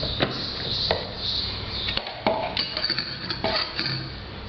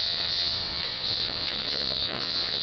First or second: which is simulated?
second